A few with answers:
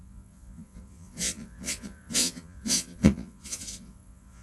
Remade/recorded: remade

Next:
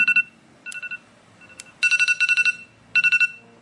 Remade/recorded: recorded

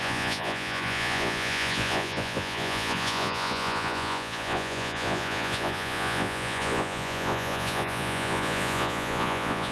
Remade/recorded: remade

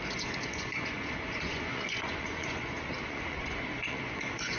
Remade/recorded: remade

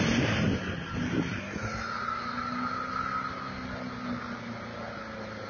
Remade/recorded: recorded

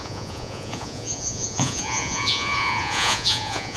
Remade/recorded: remade